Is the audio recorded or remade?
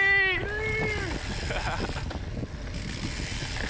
recorded